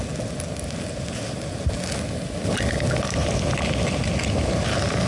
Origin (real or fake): real